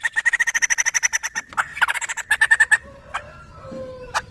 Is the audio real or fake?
real